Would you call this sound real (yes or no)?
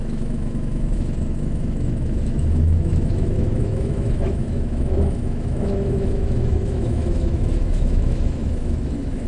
no